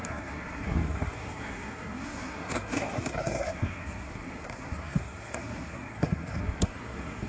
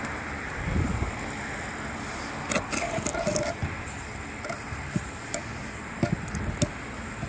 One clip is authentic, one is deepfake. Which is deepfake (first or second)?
first